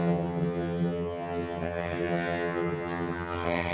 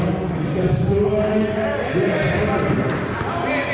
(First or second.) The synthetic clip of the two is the first